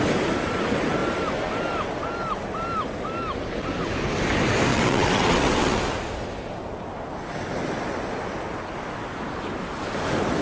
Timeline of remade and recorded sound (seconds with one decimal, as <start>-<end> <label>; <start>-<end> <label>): 0.0-4.7 recorded; 4.7-5.8 remade; 5.8-10.4 recorded